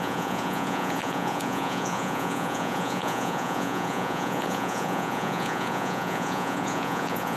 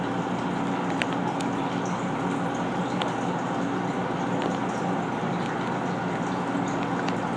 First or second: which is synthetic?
first